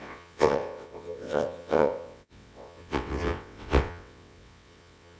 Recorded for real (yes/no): no